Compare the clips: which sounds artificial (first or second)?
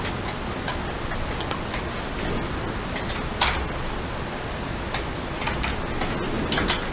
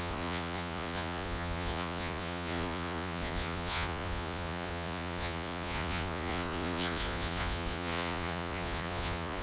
second